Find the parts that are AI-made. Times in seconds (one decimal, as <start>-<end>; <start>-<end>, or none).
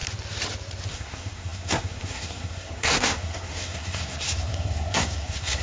0.9-5.6